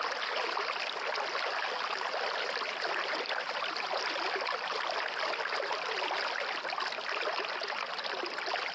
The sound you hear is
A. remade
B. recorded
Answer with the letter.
B